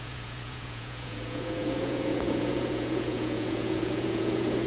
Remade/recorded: remade